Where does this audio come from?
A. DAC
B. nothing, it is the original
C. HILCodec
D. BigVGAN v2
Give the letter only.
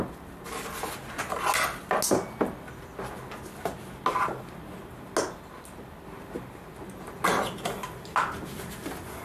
B